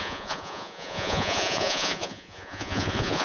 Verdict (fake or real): fake